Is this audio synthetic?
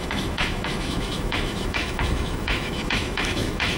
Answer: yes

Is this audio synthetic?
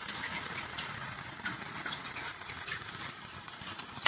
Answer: yes